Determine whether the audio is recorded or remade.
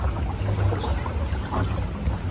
recorded